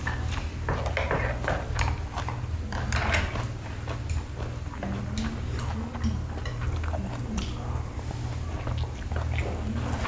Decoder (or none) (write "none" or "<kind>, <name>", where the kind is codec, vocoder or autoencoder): none